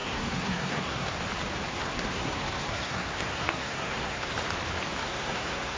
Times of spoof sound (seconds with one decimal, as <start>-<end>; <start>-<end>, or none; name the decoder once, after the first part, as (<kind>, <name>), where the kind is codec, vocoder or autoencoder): 0.0-1.2 (codec, SNAC); 1.7-4.3; 5.0-5.8